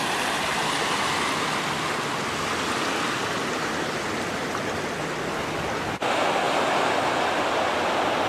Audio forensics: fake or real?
real